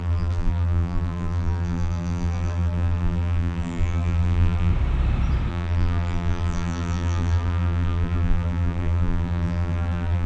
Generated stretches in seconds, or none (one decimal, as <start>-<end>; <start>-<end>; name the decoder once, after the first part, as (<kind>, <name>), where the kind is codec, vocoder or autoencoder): 0.0-4.7 (vocoder, BigVGAN v2); 5.5-10.3